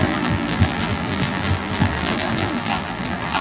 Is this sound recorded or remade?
remade